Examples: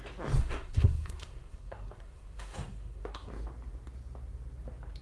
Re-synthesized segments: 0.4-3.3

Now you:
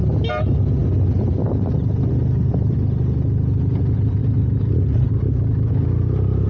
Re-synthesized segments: 4.2-5.1

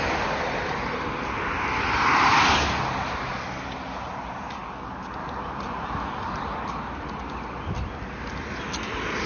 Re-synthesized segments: none

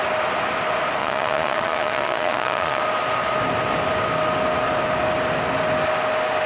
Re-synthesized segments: 1.0-2.8

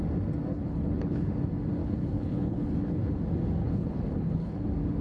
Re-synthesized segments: 0.5-1.3; 1.8-3.1; 3.6-4.6

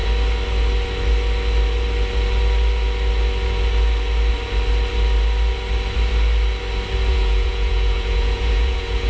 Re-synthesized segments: 7.1-9.1